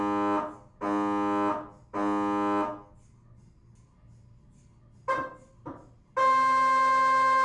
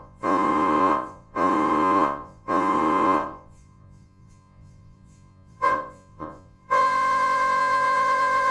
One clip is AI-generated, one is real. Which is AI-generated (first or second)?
second